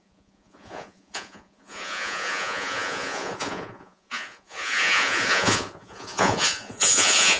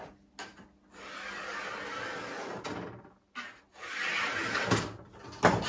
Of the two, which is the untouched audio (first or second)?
second